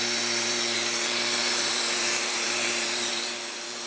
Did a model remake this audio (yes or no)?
yes